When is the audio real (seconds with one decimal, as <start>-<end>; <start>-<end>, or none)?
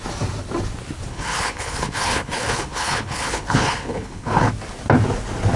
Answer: 0.0-1.1; 4.5-5.6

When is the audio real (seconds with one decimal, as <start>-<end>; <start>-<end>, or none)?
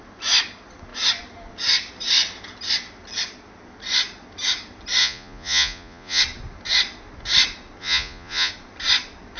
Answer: 0.0-5.0; 6.2-7.8; 8.5-9.4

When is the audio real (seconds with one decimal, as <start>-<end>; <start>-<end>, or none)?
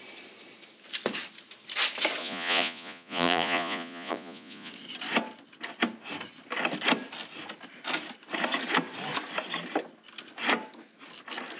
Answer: 0.0-2.2; 4.7-11.6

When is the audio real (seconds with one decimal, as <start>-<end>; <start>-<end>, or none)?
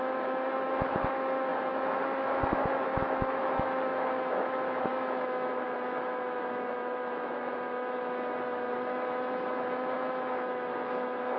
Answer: none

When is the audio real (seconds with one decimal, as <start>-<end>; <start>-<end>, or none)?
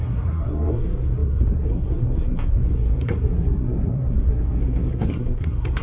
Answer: none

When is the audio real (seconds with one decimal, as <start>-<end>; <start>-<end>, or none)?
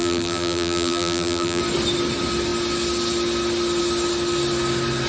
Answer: 1.6-5.1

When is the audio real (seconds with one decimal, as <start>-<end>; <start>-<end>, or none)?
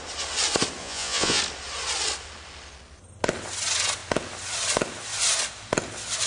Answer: 0.0-0.8; 1.4-6.3